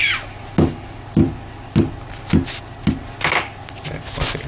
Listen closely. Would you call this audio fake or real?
real